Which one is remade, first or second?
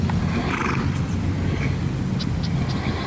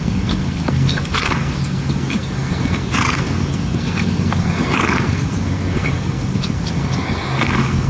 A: second